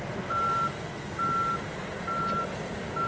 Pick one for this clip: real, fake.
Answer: real